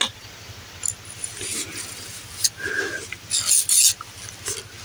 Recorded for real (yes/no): yes